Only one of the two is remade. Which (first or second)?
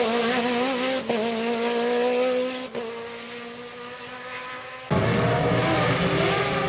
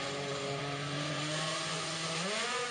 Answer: second